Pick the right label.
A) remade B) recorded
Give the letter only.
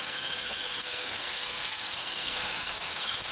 A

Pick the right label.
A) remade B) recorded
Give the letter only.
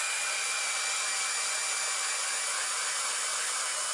B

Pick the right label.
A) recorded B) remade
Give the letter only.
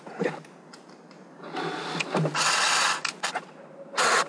A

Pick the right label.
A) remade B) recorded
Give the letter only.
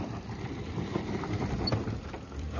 A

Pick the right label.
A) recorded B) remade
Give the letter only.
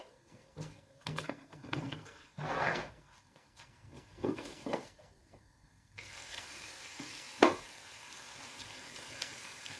B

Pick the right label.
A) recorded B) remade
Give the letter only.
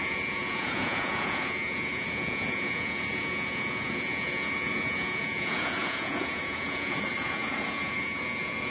B